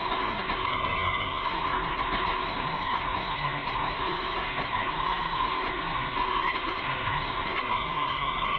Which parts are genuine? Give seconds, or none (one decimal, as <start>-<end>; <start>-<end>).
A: none